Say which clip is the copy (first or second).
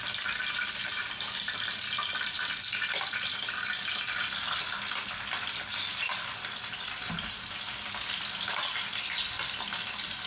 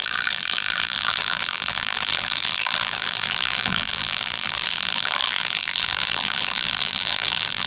second